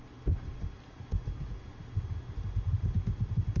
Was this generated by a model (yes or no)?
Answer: no